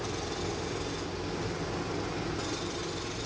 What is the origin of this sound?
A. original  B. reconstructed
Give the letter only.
A